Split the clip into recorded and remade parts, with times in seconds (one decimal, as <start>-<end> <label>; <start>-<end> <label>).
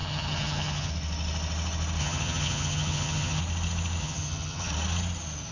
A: 0.0-0.9 remade; 0.9-2.0 recorded; 2.0-3.4 remade; 3.4-4.0 recorded; 4.0-4.7 remade; 4.7-5.5 recorded